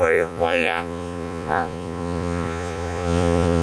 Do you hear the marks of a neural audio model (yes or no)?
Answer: yes